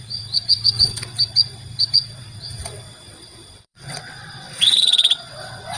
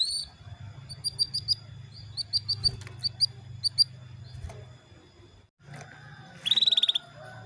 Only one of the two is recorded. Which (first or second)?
second